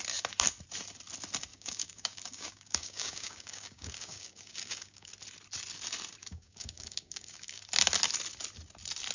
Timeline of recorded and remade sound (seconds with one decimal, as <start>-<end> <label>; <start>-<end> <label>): 0.0-1.5 recorded; 1.5-5.1 remade; 5.1-6.2 recorded; 6.2-7.6 remade; 7.6-9.1 recorded